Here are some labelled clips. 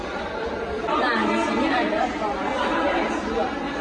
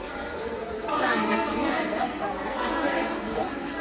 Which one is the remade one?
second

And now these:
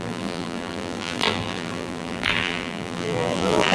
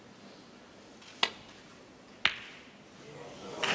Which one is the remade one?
first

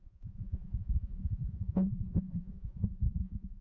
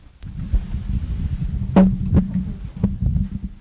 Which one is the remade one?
first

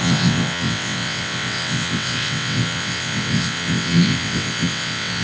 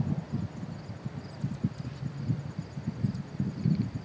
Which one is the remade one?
first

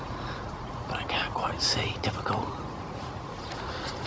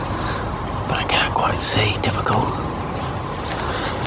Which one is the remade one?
first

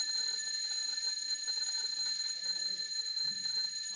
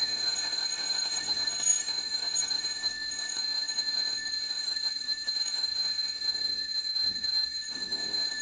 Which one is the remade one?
second